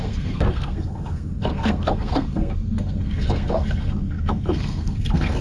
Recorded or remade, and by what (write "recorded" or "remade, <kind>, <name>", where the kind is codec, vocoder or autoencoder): remade, codec, SNAC